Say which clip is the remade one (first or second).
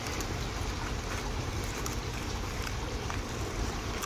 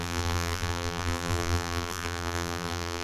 second